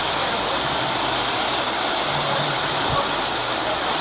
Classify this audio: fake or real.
real